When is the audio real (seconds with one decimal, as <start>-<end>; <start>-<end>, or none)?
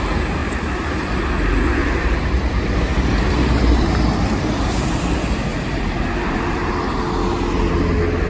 0.0-0.4; 1.1-1.8; 4.0-5.5; 6.7-8.3